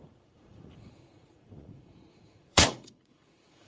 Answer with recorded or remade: remade